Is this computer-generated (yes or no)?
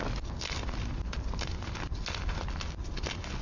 no